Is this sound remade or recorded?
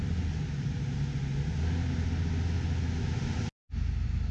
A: recorded